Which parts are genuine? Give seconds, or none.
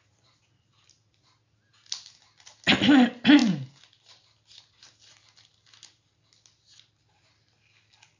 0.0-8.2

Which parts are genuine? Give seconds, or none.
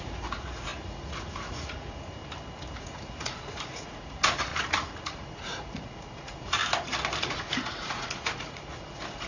2.2-2.8; 6.6-7.2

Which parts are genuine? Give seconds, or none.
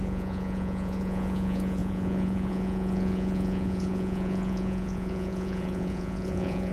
none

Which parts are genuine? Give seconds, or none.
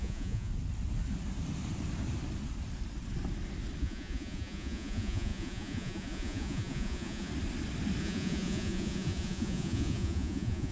0.5-3.8; 7.3-8.0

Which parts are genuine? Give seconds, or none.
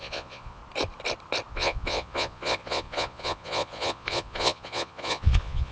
0.6-1.5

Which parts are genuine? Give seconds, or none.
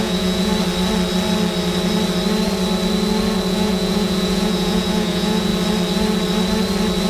0.5-3.5; 5.5-7.1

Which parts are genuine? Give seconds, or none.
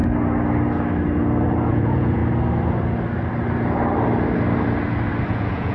0.0-1.7; 2.2-5.3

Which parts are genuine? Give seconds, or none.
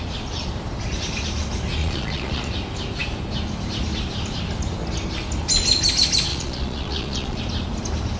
0.0-1.8; 2.5-6.3; 7.4-8.2